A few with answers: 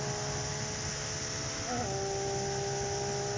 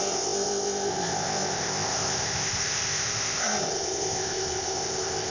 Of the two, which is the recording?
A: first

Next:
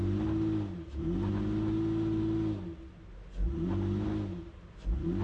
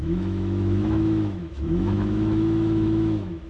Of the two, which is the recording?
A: first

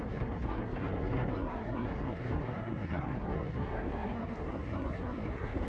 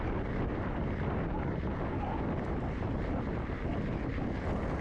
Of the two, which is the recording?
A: second